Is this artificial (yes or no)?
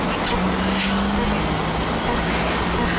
no